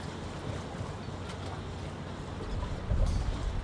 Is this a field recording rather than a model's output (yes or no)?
yes